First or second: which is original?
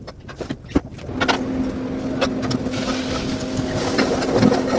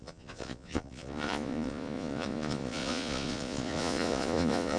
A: first